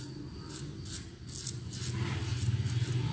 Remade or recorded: recorded